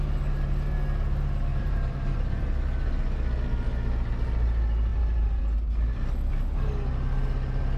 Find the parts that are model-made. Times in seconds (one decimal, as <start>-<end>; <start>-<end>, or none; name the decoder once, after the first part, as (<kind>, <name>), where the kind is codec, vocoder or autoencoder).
1.5-2.4 (vocoder, BigVGAN v2); 4.9-5.4